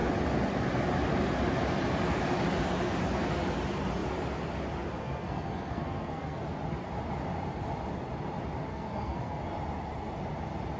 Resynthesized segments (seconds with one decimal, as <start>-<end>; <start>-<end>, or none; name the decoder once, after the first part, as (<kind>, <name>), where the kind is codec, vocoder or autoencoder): 5.0-6.4 (codec, SNAC); 8.7-9.4